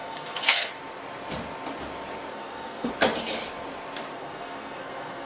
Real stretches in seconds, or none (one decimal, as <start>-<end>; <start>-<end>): 0.7-2.3; 2.9-4.1